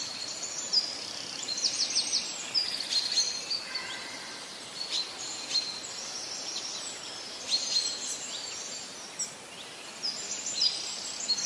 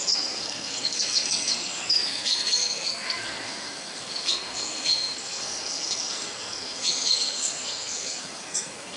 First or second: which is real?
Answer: first